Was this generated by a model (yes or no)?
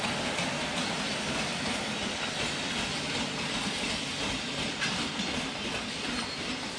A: no